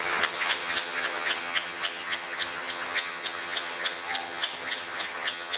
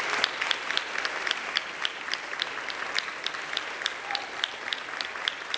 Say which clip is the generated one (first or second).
first